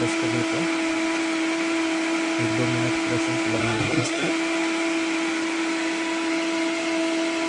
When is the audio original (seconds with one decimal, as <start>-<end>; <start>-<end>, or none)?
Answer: 0.0-3.6; 4.3-7.5